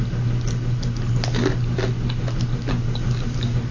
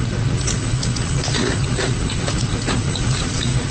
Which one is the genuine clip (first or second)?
first